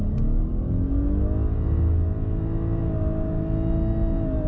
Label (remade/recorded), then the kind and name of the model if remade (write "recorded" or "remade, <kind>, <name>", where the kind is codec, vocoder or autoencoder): recorded